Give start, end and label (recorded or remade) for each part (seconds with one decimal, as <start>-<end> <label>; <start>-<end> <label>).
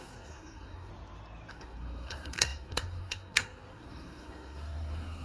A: 0.0-0.9 remade; 0.9-1.5 recorded; 1.5-5.2 remade